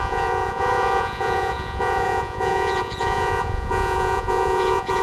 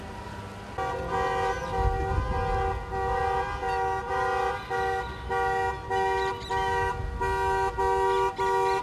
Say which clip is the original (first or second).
second